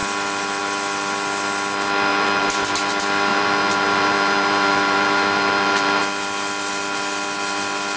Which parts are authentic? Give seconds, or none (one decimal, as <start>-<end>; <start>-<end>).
0.0-2.1; 2.9-3.3; 6.0-8.0

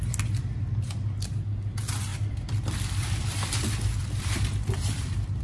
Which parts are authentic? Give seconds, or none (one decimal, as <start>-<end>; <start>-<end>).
0.0-2.1

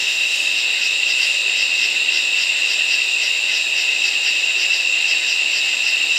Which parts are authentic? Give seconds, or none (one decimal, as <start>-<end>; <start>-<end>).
0.6-6.2

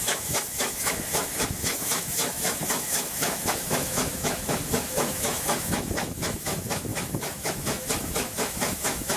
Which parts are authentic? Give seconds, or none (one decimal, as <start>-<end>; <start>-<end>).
none

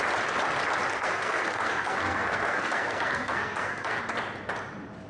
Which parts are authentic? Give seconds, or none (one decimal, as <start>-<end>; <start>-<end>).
0.0-0.9; 4.0-5.1

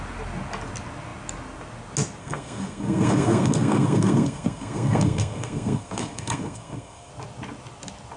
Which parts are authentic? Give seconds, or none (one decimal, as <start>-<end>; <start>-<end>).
0.0-2.2; 7.1-8.2

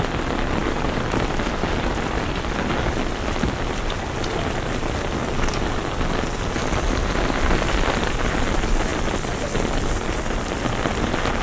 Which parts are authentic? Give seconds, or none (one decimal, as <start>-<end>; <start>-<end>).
0.0-0.6; 1.7-8.9; 9.9-11.4